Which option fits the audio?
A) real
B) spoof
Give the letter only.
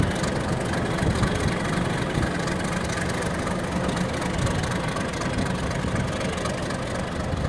A